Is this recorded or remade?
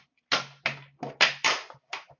recorded